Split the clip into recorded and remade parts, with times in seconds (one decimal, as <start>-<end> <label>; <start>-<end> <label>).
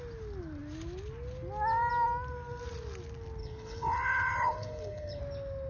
0.0-3.4 recorded; 3.4-5.2 remade; 5.2-5.7 recorded